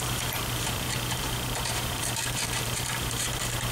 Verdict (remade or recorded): remade